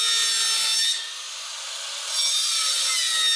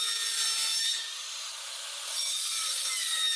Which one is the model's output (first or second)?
second